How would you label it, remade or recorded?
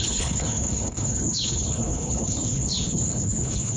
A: remade